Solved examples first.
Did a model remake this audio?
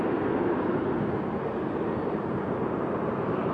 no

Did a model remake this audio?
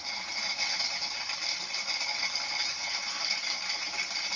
no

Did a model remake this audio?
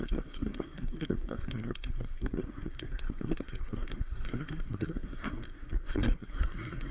yes